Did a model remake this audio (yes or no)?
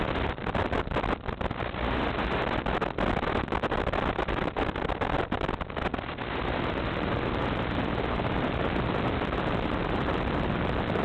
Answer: no